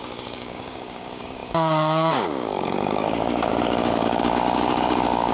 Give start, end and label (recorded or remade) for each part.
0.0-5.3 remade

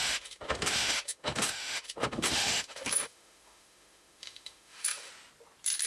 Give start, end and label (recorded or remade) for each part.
0.0-5.1 remade; 5.1-5.9 recorded

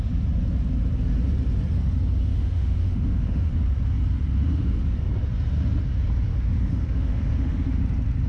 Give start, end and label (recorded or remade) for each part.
0.0-2.3 recorded; 2.3-3.5 remade; 3.5-6.3 recorded; 6.3-7.8 remade; 7.8-8.3 recorded